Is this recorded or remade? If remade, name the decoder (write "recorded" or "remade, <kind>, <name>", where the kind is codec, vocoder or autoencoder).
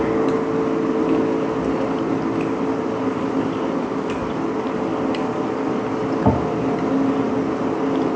recorded